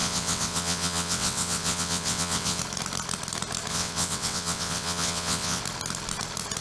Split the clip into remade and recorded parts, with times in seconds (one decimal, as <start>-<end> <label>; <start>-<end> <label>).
0.0-2.6 remade; 2.6-3.7 recorded; 3.7-5.6 remade; 5.6-6.6 recorded